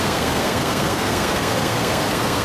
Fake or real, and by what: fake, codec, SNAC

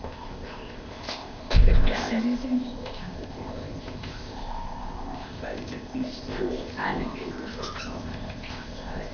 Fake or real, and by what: fake, codec, ZipCodec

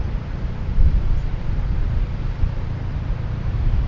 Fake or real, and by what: real